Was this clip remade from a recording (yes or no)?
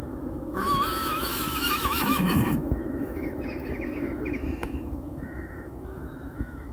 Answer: yes